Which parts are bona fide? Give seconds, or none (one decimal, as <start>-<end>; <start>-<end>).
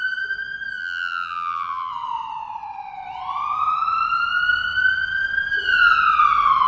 0.0-0.8; 1.9-6.7